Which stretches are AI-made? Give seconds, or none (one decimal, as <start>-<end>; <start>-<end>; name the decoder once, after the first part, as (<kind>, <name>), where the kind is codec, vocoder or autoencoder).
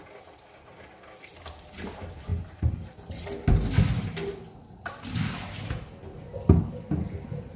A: none